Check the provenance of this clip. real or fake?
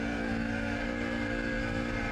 fake